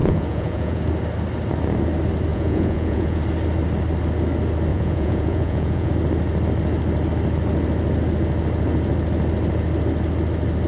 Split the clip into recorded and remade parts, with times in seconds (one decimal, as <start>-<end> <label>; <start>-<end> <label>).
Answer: 0.0-0.8 remade; 0.8-2.3 recorded; 2.3-3.2 remade; 3.2-4.7 recorded; 4.7-5.9 remade; 5.9-10.7 recorded